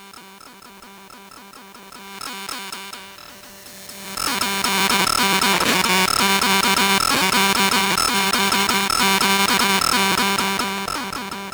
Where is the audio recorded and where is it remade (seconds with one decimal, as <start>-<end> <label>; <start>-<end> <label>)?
0.0-7.8 recorded; 7.8-9.0 remade; 9.0-11.5 recorded